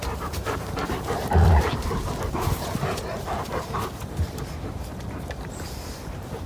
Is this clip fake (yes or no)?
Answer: yes